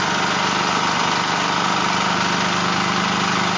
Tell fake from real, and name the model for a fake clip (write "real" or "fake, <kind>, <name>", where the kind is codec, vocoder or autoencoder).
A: real